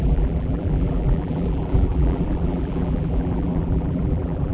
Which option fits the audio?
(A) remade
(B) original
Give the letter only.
A